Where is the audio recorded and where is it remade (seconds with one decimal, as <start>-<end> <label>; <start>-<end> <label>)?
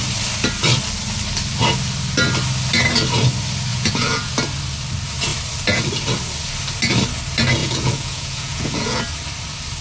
0.0-3.7 recorded; 3.7-4.3 remade; 4.3-7.6 recorded; 7.6-9.0 remade; 9.0-9.8 recorded